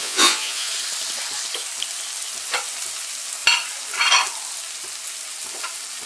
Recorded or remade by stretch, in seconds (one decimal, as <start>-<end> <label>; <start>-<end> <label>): 0.0-0.7 remade; 0.7-6.1 recorded